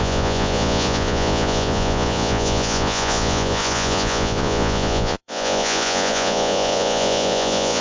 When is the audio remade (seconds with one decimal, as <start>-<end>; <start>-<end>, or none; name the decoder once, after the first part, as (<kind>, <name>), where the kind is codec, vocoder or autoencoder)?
0.0-7.8 (vocoder, Vocos)